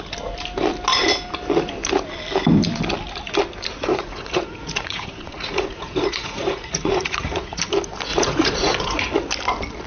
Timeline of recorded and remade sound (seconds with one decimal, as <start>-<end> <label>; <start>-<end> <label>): 0.0-3.9 recorded; 3.9-7.6 remade; 7.6-8.1 recorded; 8.1-9.0 remade; 9.0-9.9 recorded